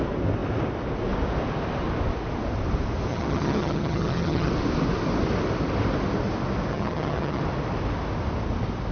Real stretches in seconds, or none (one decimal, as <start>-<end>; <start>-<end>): 0.0-3.1; 4.5-6.7; 7.4-8.9

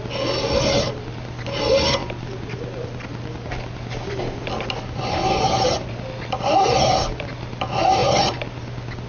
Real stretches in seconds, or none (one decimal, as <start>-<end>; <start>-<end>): 0.0-9.1

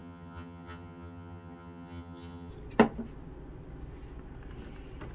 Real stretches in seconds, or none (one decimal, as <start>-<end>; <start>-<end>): 2.5-5.1

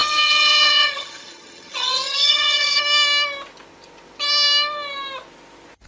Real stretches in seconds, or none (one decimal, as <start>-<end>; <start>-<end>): 2.8-5.9